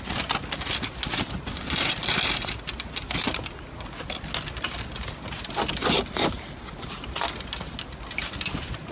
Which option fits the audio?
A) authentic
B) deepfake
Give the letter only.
A